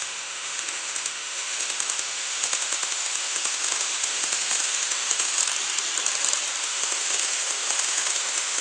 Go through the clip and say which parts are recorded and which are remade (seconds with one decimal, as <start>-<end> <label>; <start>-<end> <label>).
0.0-5.4 remade; 5.4-6.6 recorded; 6.6-8.6 remade